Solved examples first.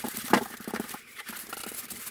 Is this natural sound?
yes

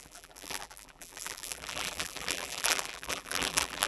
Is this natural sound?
no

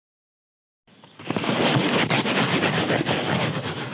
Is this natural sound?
yes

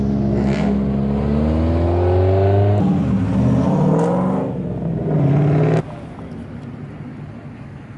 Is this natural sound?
yes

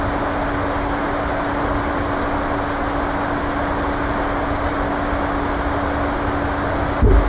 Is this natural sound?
yes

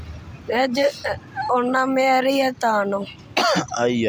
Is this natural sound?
yes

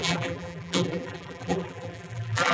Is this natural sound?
no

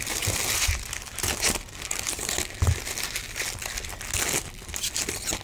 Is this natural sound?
yes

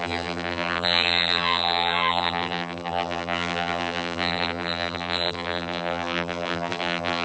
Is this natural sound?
no